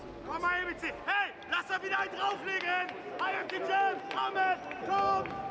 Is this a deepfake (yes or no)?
no